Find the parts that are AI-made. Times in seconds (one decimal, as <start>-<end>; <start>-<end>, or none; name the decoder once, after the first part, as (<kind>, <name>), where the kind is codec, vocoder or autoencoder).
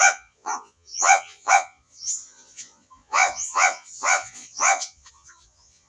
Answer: 0.0-5.9 (vocoder, Vocos)